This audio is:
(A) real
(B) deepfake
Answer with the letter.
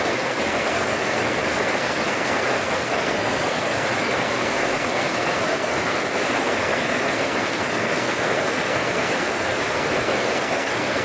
B